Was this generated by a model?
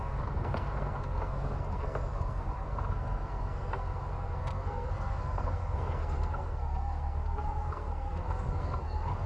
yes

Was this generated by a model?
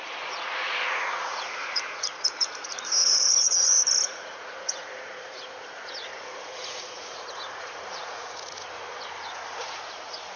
yes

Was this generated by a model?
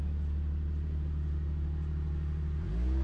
no